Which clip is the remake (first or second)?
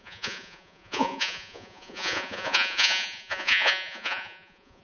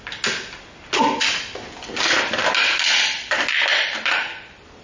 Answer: first